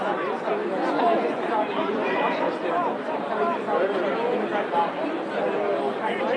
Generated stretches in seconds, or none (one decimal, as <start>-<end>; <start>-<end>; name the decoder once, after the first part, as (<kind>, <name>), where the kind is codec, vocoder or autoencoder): 0.8-2.4 (vocoder, Vocos)